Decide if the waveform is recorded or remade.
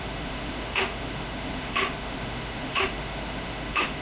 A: remade